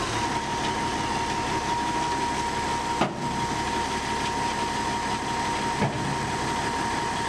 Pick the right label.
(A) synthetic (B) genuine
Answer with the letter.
B